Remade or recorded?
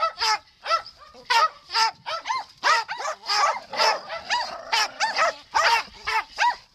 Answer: recorded